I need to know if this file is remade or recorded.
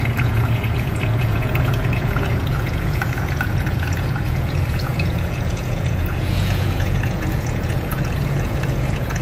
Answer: remade